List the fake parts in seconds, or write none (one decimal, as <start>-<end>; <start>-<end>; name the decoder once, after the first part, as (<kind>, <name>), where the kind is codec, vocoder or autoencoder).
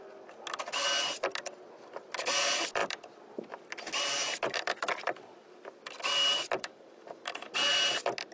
none